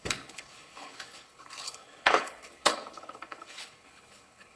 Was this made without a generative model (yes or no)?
no